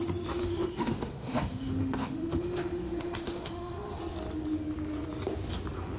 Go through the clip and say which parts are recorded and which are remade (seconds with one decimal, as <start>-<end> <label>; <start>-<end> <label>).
0.0-0.4 recorded; 0.4-4.0 remade; 4.0-6.0 recorded